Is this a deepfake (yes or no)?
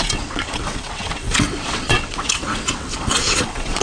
yes